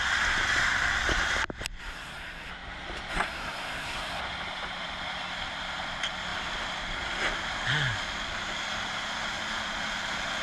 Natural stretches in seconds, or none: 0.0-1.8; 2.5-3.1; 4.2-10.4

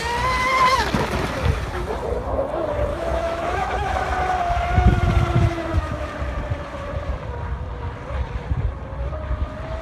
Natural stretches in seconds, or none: 0.0-2.9; 3.7-9.8

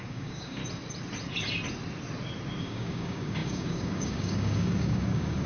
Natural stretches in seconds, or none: 0.6-2.6